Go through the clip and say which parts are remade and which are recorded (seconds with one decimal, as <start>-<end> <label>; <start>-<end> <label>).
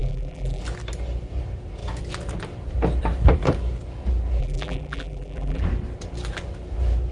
0.0-0.6 remade; 0.6-4.4 recorded; 4.4-5.6 remade; 5.6-7.1 recorded